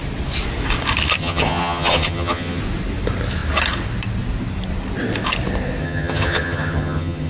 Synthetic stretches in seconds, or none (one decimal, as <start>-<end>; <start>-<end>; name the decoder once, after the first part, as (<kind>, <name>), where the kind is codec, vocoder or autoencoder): 1.2-2.6 (vocoder, HiFi-GAN); 5.8-7.3